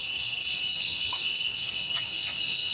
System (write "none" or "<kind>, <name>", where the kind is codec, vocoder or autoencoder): codec, SNAC